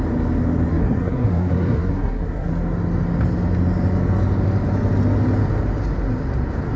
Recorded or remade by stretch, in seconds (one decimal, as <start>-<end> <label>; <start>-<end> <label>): 0.0-0.7 recorded; 0.7-2.5 remade; 2.5-6.8 recorded